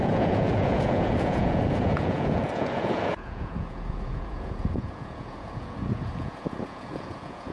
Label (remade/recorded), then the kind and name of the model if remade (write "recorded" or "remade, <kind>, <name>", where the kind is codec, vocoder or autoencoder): remade, vocoder, Vocos